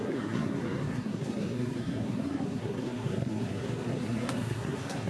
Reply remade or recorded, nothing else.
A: remade